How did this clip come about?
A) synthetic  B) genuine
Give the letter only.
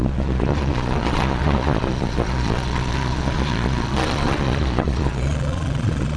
A